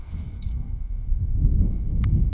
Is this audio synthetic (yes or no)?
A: yes